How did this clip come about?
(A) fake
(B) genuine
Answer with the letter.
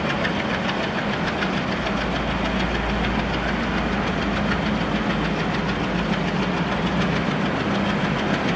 B